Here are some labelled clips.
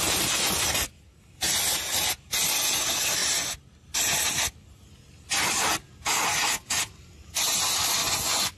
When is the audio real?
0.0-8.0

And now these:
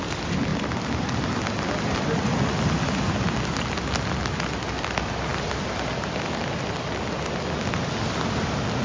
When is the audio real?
0.0-8.8